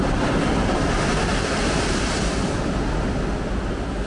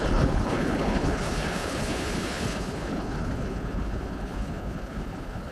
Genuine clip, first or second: first